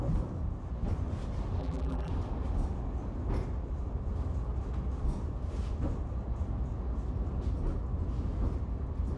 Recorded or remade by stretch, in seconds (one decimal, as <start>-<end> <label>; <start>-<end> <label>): 0.0-1.6 recorded; 1.6-2.1 remade; 2.1-9.2 recorded